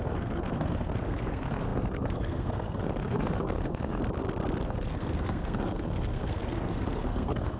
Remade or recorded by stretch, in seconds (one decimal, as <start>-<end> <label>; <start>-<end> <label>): 0.0-4.0 remade; 4.0-4.6 recorded; 4.6-7.6 remade